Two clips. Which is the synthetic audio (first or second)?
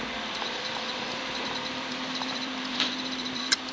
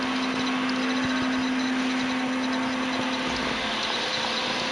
first